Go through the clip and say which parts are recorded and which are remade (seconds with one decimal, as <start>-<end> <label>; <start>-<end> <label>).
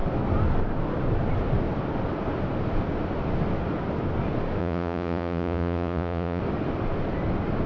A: 0.0-4.6 recorded; 4.6-6.4 remade; 6.4-7.7 recorded